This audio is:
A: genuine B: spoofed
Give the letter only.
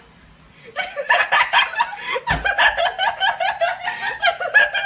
A